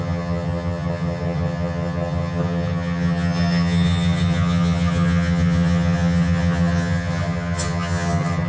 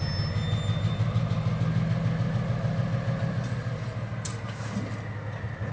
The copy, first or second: first